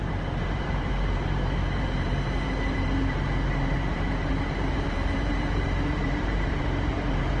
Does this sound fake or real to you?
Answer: fake